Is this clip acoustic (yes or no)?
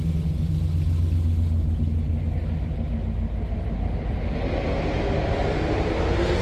yes